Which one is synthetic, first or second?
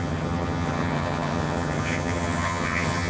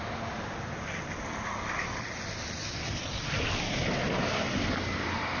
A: first